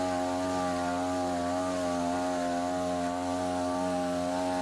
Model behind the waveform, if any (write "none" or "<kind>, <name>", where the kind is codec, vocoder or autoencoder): none